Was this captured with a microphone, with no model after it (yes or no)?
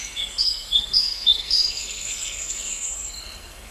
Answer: no